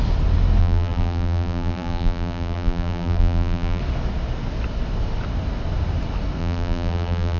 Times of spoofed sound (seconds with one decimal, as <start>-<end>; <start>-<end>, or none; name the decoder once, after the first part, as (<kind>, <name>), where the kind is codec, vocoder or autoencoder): 0.6-3.8 (vocoder, BigVGAN v2); 6.4-7.4